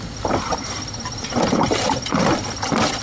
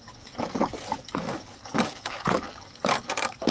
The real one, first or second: first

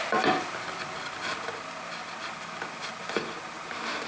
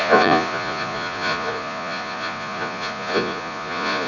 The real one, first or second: first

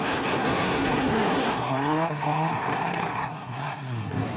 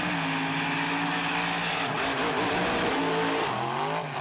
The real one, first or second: second